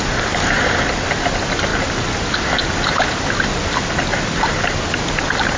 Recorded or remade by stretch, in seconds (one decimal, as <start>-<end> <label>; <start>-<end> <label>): 0.0-5.6 recorded